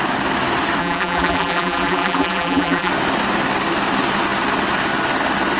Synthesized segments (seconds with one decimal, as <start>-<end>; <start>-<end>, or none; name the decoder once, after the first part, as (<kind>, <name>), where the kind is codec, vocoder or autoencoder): 0.8-2.9 (vocoder, BigVGAN v2)